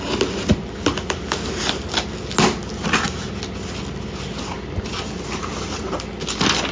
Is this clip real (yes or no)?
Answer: yes